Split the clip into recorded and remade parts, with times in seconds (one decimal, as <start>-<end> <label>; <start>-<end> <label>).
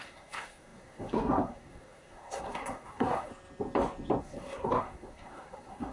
0.0-3.3 remade; 3.3-4.2 recorded; 4.2-5.9 remade